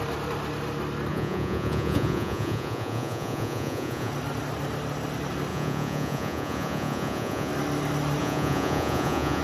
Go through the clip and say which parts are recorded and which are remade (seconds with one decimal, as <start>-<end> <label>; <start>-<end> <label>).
0.0-1.1 recorded; 1.1-4.1 remade; 4.1-5.5 recorded; 5.5-7.5 remade; 7.5-8.2 recorded; 8.2-9.4 remade